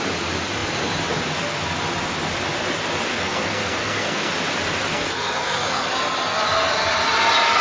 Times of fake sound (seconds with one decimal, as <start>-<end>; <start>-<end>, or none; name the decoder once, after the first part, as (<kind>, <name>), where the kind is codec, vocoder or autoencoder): 3.1-4.3 (codec, SNAC); 4.9-5.9